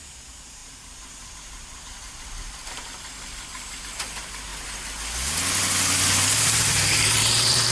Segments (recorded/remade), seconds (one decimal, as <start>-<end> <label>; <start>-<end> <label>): 0.0-4.5 remade; 4.5-6.4 recorded; 6.4-7.7 remade